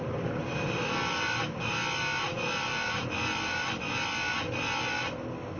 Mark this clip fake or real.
real